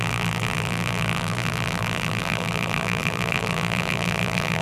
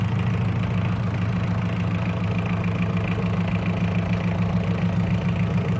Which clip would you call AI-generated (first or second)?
first